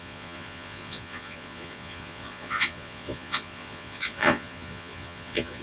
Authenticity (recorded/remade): remade